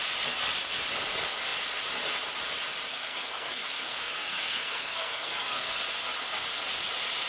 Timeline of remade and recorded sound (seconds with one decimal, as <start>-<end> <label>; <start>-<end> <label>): 0.0-2.9 recorded; 2.9-5.7 remade; 5.7-7.3 recorded